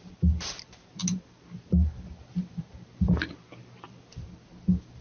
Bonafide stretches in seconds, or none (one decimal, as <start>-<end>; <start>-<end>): 0.0-5.0